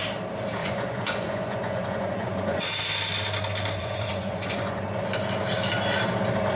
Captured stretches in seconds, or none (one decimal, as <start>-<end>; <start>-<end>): 0.0-0.6; 2.6-3.8; 4.8-6.6